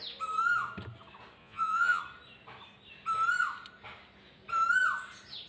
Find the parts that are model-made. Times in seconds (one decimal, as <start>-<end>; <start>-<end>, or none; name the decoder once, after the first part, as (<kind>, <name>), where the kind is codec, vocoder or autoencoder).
1.4-2.0 (vocoder, Vocos)